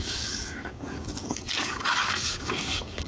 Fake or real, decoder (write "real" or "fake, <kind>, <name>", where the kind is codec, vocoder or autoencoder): fake, codec, DAC